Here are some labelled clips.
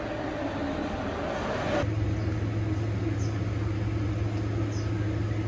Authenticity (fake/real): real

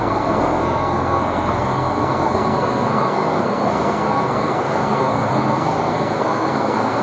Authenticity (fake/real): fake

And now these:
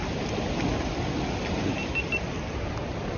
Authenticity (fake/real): real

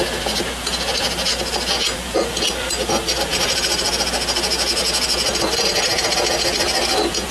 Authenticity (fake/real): real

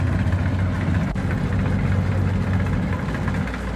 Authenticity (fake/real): real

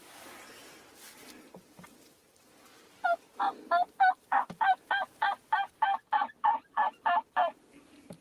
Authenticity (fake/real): real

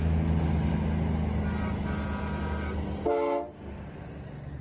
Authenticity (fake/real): real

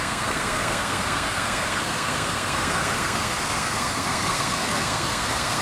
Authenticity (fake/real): fake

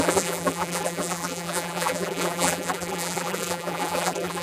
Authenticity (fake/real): fake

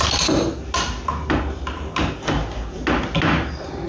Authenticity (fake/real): real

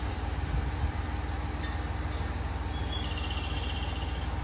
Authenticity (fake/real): real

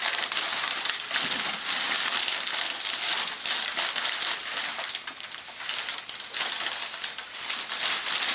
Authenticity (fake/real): real